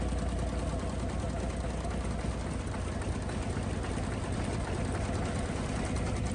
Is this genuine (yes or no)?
yes